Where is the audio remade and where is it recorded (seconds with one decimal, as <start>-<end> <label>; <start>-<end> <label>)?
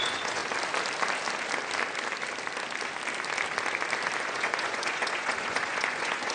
0.0-0.4 remade; 0.4-4.2 recorded; 4.2-6.3 remade